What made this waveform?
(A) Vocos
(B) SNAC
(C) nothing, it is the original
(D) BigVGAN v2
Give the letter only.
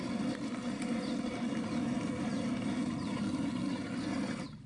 C